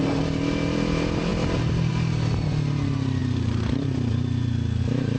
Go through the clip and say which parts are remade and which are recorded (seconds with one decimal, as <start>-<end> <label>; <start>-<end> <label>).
0.0-5.2 recorded